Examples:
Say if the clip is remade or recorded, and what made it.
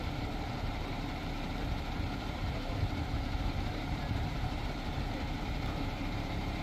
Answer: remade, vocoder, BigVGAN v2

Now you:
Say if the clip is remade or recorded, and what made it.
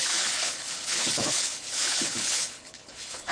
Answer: remade, codec, HILCodec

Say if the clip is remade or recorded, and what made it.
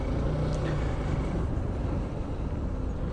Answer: recorded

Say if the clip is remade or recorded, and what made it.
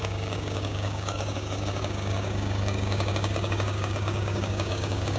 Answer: remade, codec, DAC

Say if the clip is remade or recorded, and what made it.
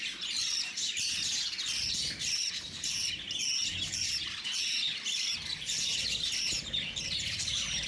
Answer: recorded